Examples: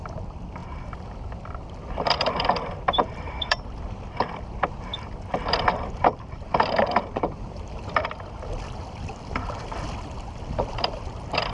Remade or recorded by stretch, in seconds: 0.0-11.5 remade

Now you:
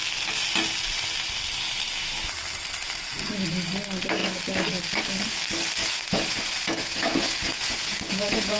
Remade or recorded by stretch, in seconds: 0.0-5.8 recorded; 5.8-8.6 remade

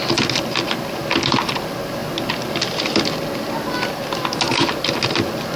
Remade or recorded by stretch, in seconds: 0.0-5.6 recorded

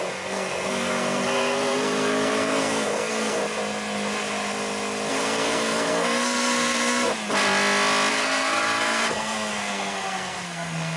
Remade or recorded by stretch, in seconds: 0.0-3.4 remade; 3.4-5.1 recorded; 5.1-7.1 remade; 7.1-8.1 recorded; 8.1-11.0 remade

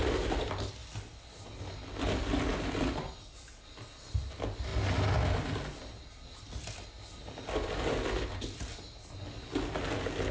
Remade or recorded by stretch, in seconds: 0.0-10.3 recorded